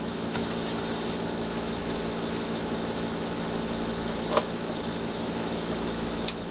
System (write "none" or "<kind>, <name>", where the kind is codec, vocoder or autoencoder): autoencoder, DAC-VAE